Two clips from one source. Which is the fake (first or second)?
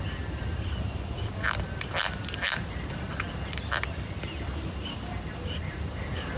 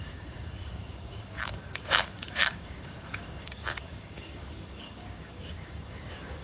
second